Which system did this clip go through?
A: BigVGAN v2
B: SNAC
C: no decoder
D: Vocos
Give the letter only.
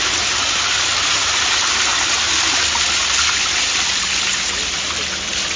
C